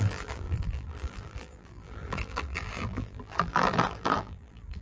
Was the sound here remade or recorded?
remade